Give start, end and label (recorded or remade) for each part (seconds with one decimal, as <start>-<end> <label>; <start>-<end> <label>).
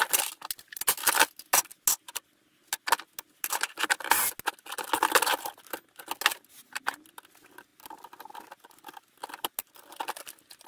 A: 0.0-10.7 recorded